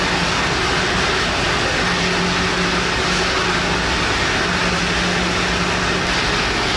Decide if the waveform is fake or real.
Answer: real